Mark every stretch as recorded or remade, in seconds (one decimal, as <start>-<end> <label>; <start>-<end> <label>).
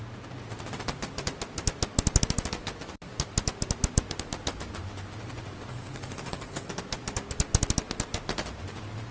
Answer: 0.0-5.7 recorded; 5.7-6.7 remade; 6.7-9.1 recorded